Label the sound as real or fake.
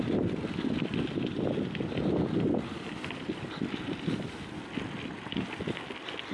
real